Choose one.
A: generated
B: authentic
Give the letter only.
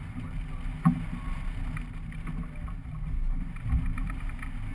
B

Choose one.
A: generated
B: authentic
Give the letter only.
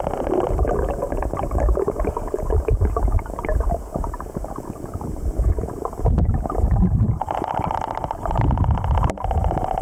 B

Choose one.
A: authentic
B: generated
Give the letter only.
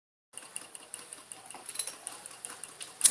A